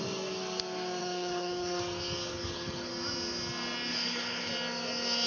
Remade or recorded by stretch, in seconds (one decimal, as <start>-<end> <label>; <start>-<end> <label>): 0.0-1.0 recorded; 1.0-1.8 remade; 1.8-2.3 recorded; 2.3-2.9 remade; 2.9-3.9 recorded; 3.9-4.5 remade; 4.5-5.3 recorded